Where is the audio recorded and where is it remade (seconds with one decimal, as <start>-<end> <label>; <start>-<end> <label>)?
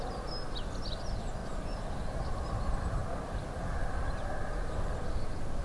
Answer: 0.0-5.6 recorded